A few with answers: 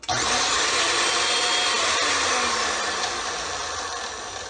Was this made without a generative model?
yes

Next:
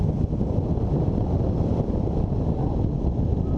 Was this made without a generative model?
yes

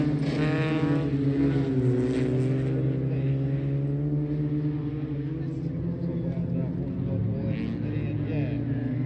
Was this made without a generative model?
yes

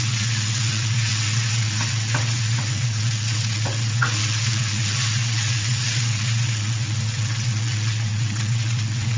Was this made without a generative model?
no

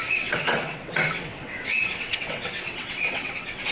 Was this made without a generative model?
no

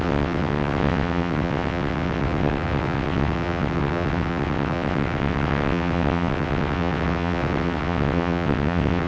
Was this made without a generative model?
no